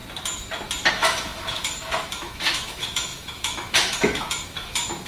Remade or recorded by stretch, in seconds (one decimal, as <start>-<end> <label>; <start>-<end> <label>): 0.0-0.9 recorded; 0.9-5.1 remade